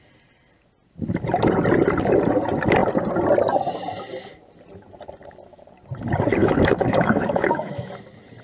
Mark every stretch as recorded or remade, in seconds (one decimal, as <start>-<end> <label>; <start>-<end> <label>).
0.0-6.4 recorded; 6.4-7.9 remade; 7.9-8.4 recorded